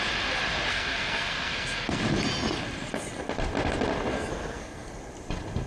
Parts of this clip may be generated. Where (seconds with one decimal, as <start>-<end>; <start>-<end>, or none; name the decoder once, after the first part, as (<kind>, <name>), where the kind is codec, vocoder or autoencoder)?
0.7-2.0 (codec, SNAC); 4.1-4.9